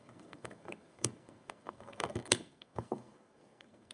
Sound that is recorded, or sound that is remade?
remade